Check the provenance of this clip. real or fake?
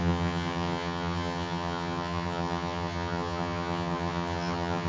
fake